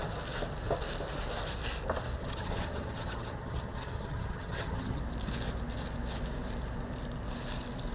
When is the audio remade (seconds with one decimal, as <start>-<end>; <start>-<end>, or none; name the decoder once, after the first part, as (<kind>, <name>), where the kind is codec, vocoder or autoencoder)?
2.2-5.0 (vocoder, HiFi-GAN)